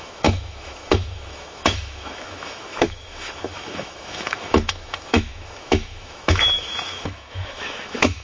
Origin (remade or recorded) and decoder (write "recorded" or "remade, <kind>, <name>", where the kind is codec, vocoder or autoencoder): remade, autoencoder, DAC-VAE